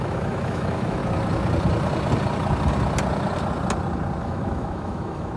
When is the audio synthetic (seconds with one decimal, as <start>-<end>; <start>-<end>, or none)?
0.0-1.0; 4.2-5.4